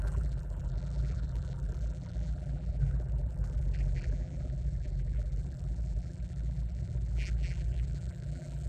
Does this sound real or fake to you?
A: fake